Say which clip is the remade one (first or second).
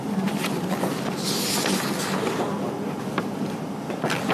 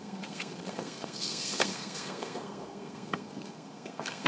second